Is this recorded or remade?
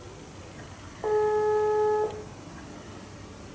recorded